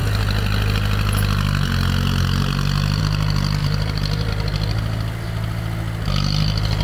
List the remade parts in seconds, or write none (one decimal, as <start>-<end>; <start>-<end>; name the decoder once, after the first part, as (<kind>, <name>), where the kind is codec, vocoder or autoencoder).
3.6-4.3 (vocoder, BigVGAN v2)